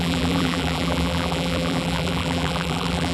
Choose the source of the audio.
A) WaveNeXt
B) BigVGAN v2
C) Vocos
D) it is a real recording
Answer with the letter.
B